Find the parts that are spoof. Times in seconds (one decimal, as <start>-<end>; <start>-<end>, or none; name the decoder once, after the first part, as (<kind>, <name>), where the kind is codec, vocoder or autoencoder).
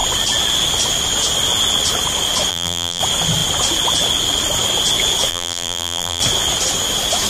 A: 2.5-3.0 (vocoder, BigVGAN v2); 5.3-6.2